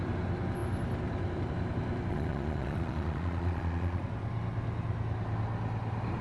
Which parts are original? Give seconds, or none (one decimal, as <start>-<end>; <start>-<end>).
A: 0.0-2.1; 4.0-6.2